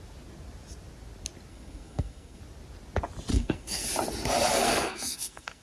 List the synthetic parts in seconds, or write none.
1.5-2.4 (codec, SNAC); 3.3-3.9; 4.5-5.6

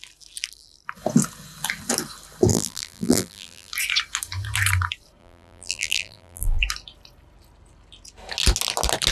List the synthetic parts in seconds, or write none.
2.5-3.7 (vocoder, BigVGAN v2); 5.2-6.6

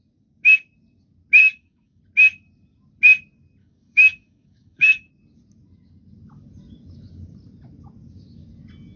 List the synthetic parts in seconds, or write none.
1.4-2.0 (codec, DAC); 3.6-5.1

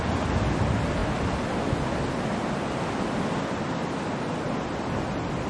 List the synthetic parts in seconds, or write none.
none

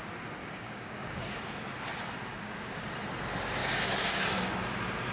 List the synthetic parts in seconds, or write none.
0.4-1.5 (codec, DAC); 2.3-2.8; 3.6-4.2

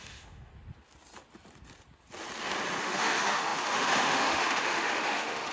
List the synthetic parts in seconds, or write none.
0.0-0.5 (autoencoder, DAC-VAE); 2.8-5.5

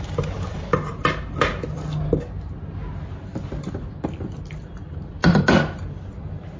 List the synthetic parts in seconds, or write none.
none

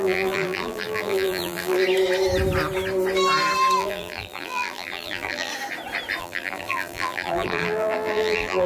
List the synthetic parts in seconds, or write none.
0.0-1.8 (vocoder, BigVGAN v2); 3.8-5.5; 6.2-8.7